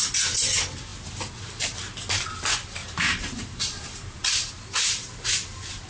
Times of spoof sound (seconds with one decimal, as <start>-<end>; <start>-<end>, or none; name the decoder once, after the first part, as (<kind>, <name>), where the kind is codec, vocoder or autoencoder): 2.8-4.5 (vocoder, BigVGAN v2)